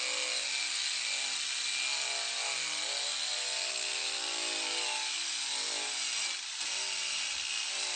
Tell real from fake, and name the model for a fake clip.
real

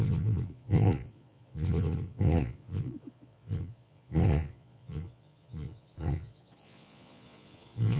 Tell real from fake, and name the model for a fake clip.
fake, vocoder, Vocos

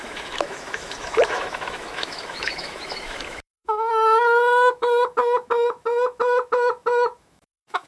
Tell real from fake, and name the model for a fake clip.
fake, autoencoder, DAC-VAE